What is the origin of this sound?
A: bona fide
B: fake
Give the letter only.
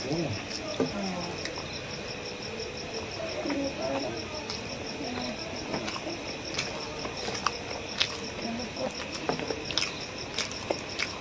A